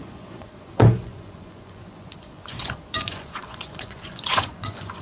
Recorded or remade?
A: remade